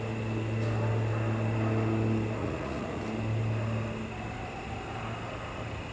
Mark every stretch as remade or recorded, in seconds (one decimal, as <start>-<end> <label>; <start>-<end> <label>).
0.0-2.4 recorded; 2.4-3.0 remade; 3.0-5.9 recorded